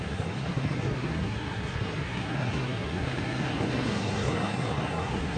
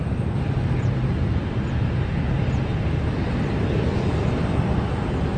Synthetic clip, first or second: first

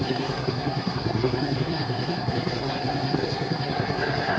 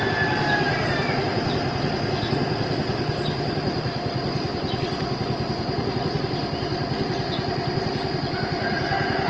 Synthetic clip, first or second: first